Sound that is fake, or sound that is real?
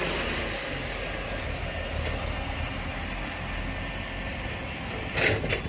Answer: real